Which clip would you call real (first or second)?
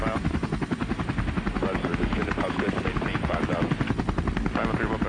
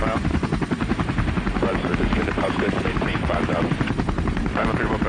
first